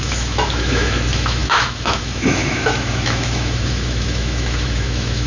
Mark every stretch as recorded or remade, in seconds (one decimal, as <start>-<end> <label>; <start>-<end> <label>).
0.0-5.3 remade